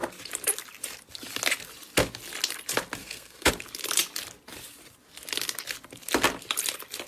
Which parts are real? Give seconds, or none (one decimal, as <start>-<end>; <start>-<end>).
0.0-3.0; 3.5-7.1